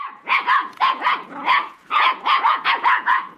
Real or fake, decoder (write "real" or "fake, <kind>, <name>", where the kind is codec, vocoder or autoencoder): fake, vocoder, Vocos